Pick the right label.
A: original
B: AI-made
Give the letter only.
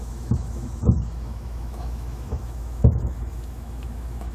B